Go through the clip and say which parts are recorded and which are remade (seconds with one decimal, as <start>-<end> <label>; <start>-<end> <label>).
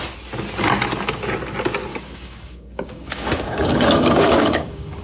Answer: 0.0-1.9 recorded; 1.9-5.0 remade